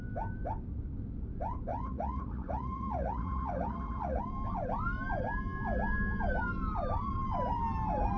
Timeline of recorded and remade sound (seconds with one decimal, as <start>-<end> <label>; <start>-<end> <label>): 0.0-1.7 recorded; 1.7-4.2 remade; 4.2-8.2 recorded